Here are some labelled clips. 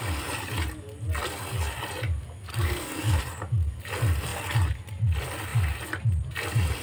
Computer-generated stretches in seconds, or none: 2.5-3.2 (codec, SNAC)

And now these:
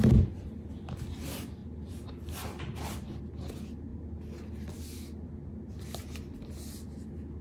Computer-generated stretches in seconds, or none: 1.6-3.2 (vocoder, BigVGAN v2); 5.4-6.0

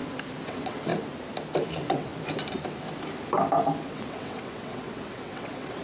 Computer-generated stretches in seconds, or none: 0.5-0.9 (vocoder, WaveNeXt); 1.7-2.1; 3.9-5.8

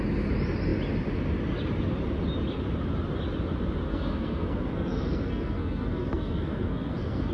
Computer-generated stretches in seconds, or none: 3.9-7.3 (codec, SNAC)

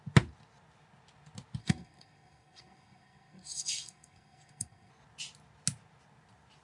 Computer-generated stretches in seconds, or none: 1.6-4.9 (codec, SNAC)

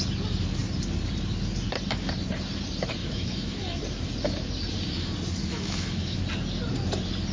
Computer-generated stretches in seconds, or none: 3.0-3.8 (autoencoder, DAC-VAE); 5.4-6.2

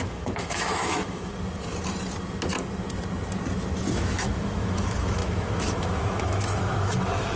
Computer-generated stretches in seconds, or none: 0.0-1.3 (autoencoder, DAC-VAE); 3.9-7.4

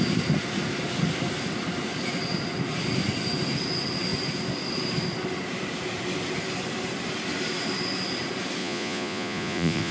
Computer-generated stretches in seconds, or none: 8.6-9.9 (vocoder, Vocos)